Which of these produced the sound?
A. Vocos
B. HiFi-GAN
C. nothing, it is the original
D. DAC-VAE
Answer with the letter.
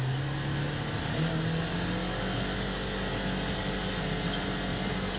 C